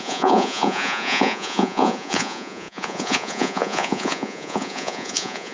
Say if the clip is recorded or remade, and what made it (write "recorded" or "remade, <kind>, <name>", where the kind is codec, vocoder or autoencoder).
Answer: remade, vocoder, Vocos